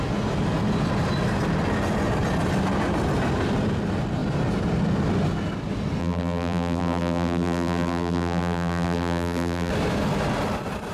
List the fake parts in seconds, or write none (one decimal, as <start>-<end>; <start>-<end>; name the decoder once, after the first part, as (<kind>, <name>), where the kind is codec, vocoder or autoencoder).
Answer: 6.0-9.7 (vocoder, BigVGAN v2)